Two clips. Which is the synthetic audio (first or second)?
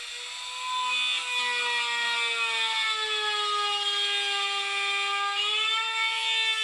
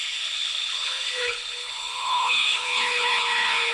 second